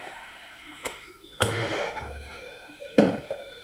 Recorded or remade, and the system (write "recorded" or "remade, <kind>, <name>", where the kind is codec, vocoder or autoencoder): remade, autoencoder, DAC-VAE